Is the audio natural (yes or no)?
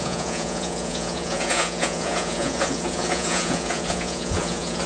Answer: no